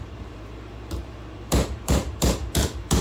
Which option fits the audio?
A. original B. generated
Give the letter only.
B